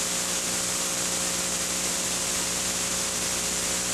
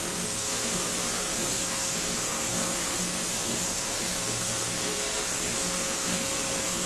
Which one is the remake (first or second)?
second